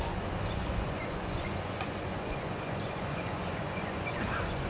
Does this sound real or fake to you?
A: fake